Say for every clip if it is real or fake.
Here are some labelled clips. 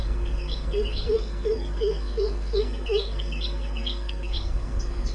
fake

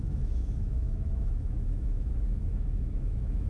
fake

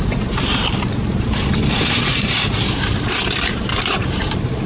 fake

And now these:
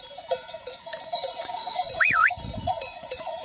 fake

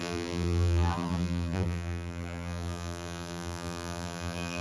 fake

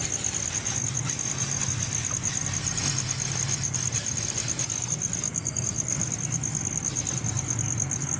real